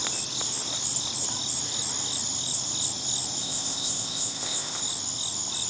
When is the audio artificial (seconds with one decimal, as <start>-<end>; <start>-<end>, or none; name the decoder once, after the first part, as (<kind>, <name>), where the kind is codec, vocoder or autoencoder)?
3.4-4.8 (codec, ZipCodec)